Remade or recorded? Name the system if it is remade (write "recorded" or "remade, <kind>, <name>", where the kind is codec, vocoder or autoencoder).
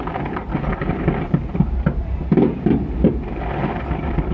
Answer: recorded